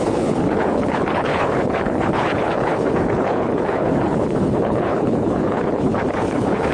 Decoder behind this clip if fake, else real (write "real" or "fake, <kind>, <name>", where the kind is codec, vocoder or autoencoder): fake, codec, HILCodec